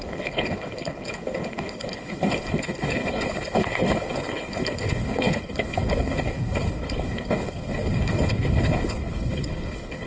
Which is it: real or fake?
fake